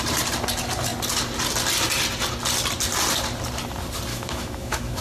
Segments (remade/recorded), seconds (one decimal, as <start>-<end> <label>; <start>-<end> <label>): 0.0-4.1 recorded; 4.1-5.0 remade